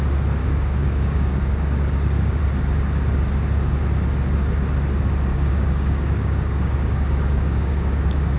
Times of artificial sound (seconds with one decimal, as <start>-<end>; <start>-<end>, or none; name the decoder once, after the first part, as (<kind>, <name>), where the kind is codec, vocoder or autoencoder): 0.4-2.4 (codec, DAC); 5.3-8.4